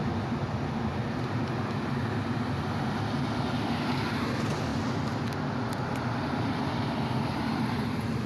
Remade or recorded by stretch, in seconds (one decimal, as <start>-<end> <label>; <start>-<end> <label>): 0.0-8.3 recorded